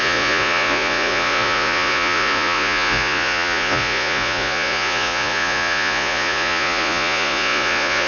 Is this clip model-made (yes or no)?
yes